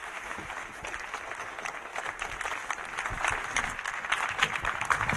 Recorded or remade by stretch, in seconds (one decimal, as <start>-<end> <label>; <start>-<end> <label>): 0.0-0.5 remade; 0.5-5.2 recorded